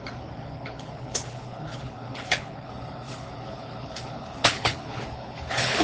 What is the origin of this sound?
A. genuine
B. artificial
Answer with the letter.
B